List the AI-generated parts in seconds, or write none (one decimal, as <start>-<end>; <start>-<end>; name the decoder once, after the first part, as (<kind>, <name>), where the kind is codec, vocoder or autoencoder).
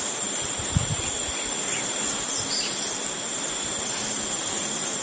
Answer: 0.0-2.1 (vocoder, BigVGAN v2); 3.3-5.0